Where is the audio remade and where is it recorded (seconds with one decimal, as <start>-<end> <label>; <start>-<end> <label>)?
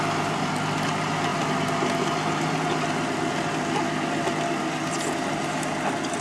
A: 0.0-6.2 recorded